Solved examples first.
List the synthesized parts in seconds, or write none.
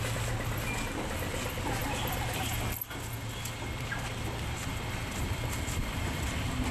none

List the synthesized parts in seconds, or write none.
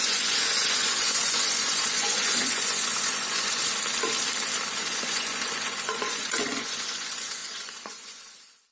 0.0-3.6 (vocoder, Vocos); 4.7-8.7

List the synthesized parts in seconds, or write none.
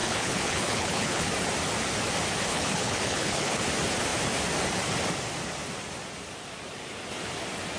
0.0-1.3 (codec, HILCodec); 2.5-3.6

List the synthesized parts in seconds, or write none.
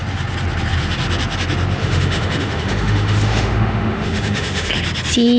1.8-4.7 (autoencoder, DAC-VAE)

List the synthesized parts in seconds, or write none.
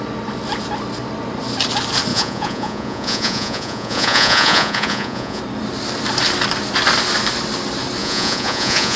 2.1-5.4 (vocoder, Vocos); 8.0-9.0